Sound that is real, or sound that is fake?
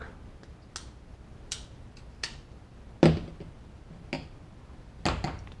real